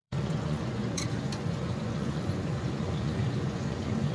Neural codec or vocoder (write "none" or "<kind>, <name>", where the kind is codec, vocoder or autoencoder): vocoder, Vocos